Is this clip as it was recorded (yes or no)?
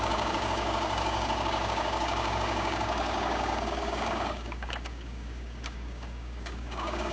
no